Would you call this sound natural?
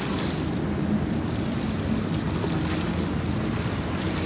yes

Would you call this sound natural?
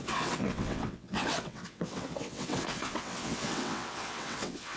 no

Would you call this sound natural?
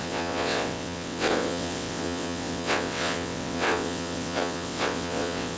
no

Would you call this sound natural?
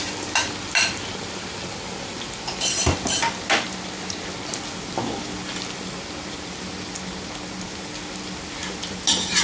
yes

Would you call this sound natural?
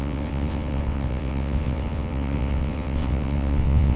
no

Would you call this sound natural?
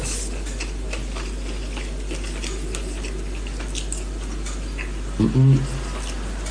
yes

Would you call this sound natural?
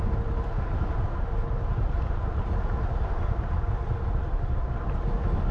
yes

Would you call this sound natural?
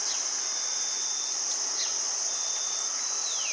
yes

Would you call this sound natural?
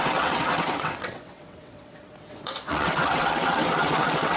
no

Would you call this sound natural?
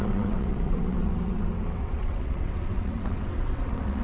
no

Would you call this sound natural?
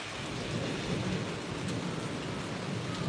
yes